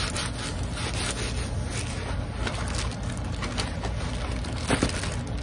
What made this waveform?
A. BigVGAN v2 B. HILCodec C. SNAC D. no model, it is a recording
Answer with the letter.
D